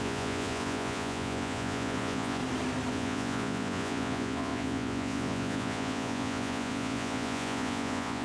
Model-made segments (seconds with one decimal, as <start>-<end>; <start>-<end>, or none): 0.0-2.4; 2.9-8.2